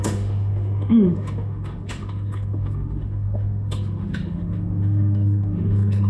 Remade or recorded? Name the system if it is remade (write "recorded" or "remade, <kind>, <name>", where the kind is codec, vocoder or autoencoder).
remade, autoencoder, DAC-VAE